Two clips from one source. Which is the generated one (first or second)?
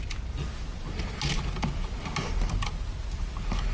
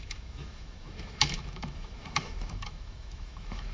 second